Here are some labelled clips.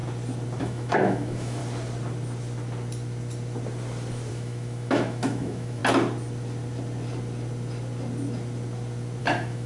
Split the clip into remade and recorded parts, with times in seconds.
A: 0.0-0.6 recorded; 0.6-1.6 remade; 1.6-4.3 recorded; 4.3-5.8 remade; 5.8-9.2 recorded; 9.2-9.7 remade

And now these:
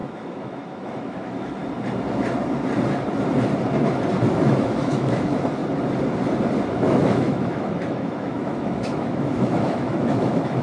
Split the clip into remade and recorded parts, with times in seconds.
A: 0.0-1.6 remade; 1.6-4.3 recorded; 4.3-5.6 remade; 5.6-6.7 recorded; 6.7-10.6 remade

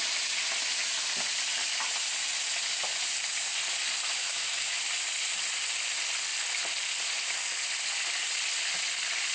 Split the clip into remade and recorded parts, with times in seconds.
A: 0.0-4.2 recorded; 4.2-4.8 remade; 4.8-9.3 recorded

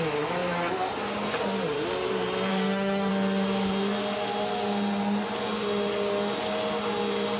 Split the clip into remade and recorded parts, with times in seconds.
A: 0.0-2.5 recorded; 2.5-3.1 remade; 3.1-7.4 recorded

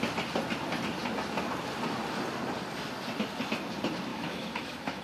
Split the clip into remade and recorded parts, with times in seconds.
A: 0.0-4.1 recorded; 4.1-5.0 remade

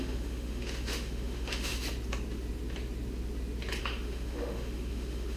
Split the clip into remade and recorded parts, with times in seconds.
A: 0.0-1.7 remade; 1.7-3.8 recorded; 3.8-5.4 remade

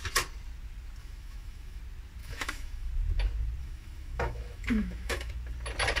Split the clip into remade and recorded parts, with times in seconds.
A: 0.0-1.0 recorded; 1.0-1.8 remade; 1.8-2.2 recorded; 2.2-2.9 remade; 2.9-3.6 recorded; 3.6-5.3 remade; 5.3-6.0 recorded

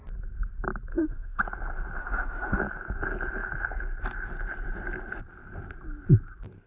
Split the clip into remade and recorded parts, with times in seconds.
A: 0.0-0.9 recorded; 0.9-1.4 remade; 1.4-2.0 recorded; 2.0-2.6 remade; 2.6-6.7 recorded